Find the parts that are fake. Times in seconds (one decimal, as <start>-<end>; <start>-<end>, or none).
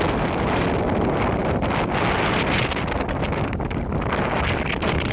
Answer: none